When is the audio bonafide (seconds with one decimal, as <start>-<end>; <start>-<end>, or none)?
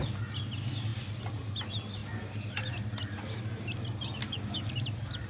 0.0-4.2; 4.7-5.3